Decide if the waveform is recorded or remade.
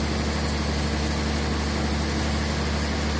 recorded